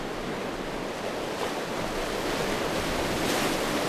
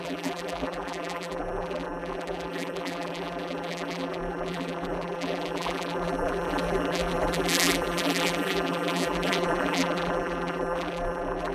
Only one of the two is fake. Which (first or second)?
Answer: second